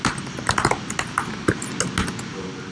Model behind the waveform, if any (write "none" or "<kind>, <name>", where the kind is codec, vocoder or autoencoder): none